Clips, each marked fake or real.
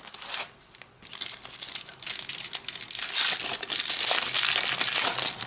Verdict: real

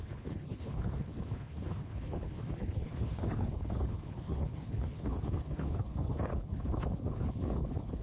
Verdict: fake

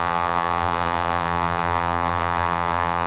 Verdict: fake